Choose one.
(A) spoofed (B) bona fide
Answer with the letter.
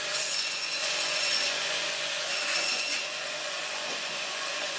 A